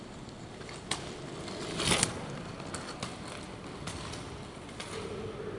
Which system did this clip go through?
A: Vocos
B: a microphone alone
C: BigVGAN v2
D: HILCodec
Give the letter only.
B